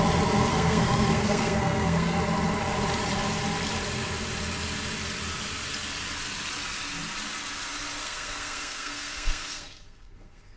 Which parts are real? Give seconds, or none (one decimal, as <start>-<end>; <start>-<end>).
0.0-0.5; 2.2-8.0